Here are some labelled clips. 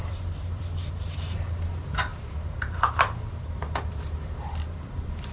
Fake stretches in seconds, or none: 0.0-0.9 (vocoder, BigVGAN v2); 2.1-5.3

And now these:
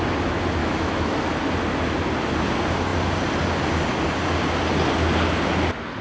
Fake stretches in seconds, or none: 0.6-1.2 (autoencoder, DAC-VAE)

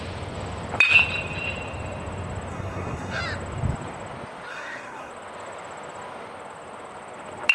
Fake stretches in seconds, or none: 2.5-3.2 (codec, SNAC); 4.5-5.1

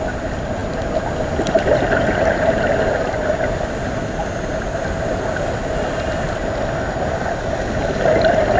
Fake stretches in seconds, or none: none

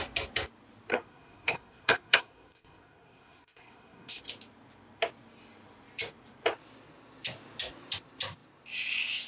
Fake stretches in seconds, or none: 0.9-4.2 (codec, SNAC)

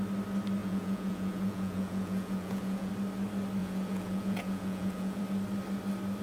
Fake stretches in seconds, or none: 0.6-2.9 (vocoder, Vocos); 3.6-5.2

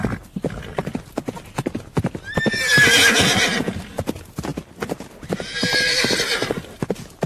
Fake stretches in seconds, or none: none